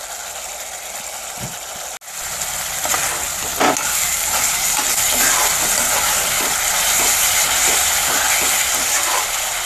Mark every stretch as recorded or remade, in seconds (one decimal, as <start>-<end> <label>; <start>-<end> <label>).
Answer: 0.0-9.7 recorded